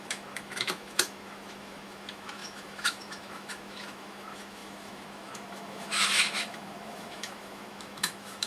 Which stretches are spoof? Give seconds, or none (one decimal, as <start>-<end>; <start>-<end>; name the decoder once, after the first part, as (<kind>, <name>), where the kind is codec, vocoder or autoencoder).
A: 0.0-8.5 (autoencoder, DAC-VAE)